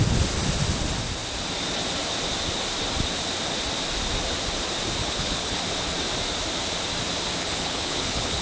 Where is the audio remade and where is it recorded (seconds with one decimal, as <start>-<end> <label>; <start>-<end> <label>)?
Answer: 0.0-5.0 recorded; 5.0-5.6 remade; 5.6-7.4 recorded; 7.4-8.4 remade